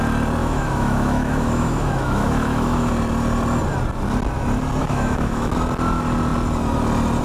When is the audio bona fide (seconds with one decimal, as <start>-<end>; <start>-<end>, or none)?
0.0-0.4; 2.9-4.8; 5.5-7.2